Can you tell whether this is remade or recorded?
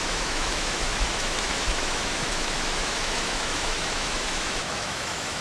remade